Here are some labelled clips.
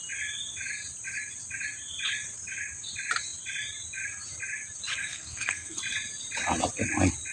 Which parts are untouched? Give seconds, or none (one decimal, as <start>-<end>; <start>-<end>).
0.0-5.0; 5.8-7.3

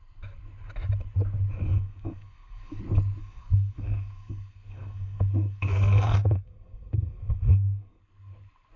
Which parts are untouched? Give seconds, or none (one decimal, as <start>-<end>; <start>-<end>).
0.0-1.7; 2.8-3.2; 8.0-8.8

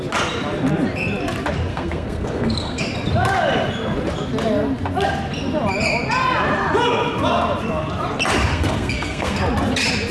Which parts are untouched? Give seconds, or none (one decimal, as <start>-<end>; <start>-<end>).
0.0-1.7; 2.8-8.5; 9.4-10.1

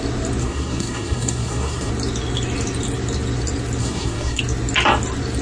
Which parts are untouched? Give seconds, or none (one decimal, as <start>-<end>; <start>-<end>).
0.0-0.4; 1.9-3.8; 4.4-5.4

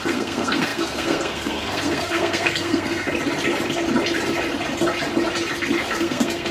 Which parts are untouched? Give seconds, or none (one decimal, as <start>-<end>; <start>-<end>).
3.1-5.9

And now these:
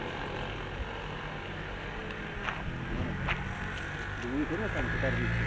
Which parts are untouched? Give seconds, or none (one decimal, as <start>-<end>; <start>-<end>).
0.0-5.5

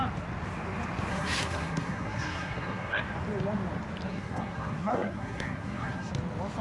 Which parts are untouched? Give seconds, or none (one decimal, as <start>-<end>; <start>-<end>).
0.0-1.1; 3.0-4.1; 6.1-6.6

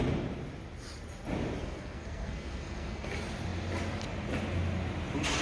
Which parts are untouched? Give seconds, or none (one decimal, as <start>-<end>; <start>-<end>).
0.0-1.6; 3.1-5.4